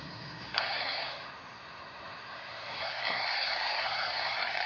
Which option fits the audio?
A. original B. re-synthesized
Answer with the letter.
B